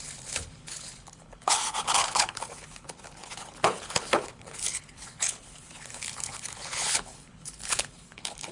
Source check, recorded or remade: remade